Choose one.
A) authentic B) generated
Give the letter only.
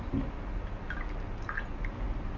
A